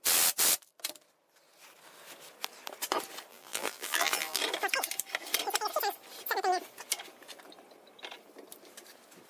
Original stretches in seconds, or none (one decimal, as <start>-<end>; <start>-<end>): 0.0-3.3; 4.4-9.3